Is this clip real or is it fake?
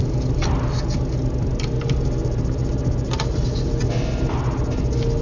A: real